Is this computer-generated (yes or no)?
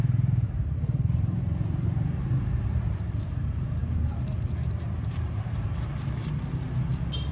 yes